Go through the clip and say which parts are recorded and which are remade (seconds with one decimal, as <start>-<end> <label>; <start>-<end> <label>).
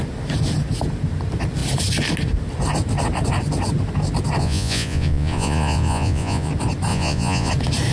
0.0-4.4 recorded; 4.4-6.5 remade; 6.5-6.9 recorded; 6.9-7.5 remade; 7.5-7.9 recorded